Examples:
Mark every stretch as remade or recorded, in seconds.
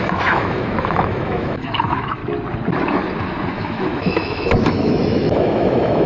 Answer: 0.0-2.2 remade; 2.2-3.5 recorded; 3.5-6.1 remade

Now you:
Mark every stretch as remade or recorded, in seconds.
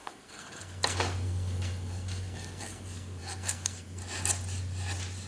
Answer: 0.0-4.0 remade; 4.0-5.3 recorded